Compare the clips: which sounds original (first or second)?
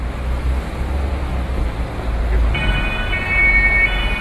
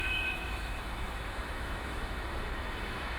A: first